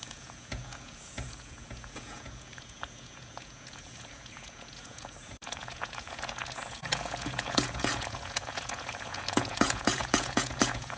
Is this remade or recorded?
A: remade